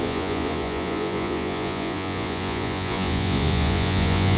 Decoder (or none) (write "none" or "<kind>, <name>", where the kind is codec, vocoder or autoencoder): vocoder, Vocos